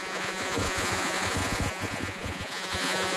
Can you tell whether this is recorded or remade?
remade